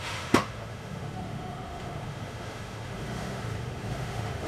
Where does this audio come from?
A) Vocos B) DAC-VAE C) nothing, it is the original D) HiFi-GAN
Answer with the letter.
B